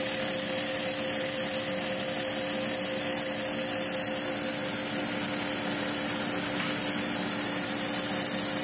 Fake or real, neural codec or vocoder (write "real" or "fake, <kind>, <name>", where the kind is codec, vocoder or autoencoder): real